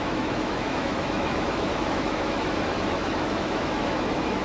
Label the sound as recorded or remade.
remade